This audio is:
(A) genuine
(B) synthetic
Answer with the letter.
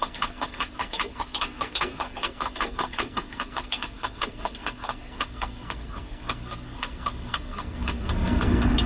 B